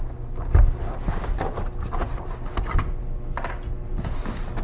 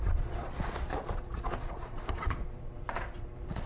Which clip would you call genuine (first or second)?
first